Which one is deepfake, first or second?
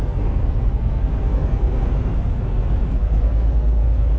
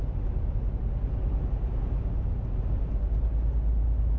first